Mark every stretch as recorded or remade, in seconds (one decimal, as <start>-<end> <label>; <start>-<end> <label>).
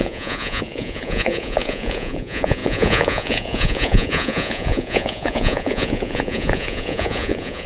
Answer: 0.0-7.7 remade